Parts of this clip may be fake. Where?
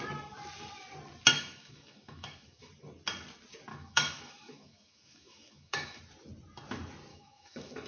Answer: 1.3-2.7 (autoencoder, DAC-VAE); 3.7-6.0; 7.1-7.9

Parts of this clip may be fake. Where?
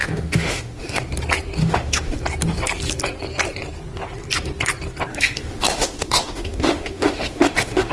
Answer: 0.0-1.0 (autoencoder, DAC-VAE); 1.6-2.2; 5.1-7.9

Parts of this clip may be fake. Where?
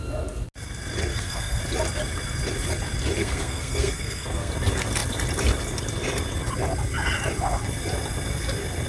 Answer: 1.1-1.6 (codec, SNAC); 3.2-4.5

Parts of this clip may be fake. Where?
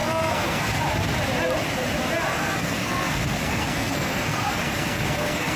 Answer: 0.0-0.8 (codec, SNAC); 2.3-5.6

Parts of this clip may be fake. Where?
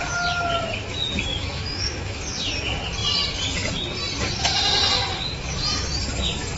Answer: 1.3-2.2 (autoencoder, DAC-VAE)